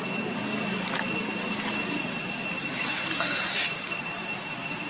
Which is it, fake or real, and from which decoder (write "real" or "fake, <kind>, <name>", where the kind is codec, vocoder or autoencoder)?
real